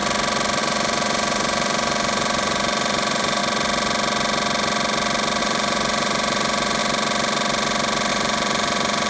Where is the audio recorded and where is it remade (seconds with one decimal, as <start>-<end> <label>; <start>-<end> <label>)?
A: 0.0-0.6 recorded; 0.6-3.4 remade; 3.4-5.4 recorded; 5.4-6.8 remade; 6.8-8.1 recorded; 8.1-9.1 remade